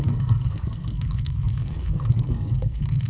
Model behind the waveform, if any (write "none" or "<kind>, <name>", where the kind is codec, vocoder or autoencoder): codec, SNAC